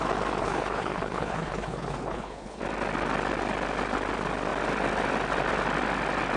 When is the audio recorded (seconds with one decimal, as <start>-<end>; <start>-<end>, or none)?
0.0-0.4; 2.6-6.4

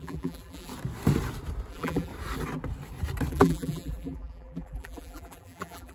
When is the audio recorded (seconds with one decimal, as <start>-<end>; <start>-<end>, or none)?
0.7-1.7; 2.1-3.3

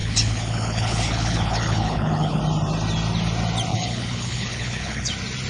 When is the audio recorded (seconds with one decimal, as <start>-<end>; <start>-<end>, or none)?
2.4-3.7; 5.1-5.5

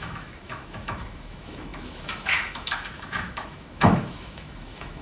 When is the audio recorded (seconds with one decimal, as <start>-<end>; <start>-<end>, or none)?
none

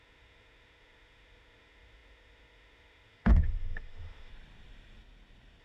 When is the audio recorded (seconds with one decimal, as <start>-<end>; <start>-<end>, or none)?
4.3-5.6

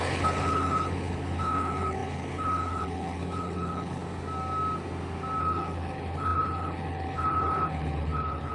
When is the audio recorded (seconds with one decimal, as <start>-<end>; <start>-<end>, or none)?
4.0-5.4

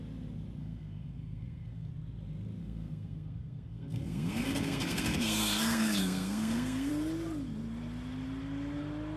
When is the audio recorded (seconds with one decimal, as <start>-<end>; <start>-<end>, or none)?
0.0-0.6; 1.9-2.6; 6.9-9.2